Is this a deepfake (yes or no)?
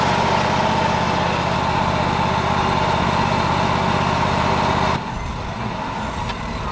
no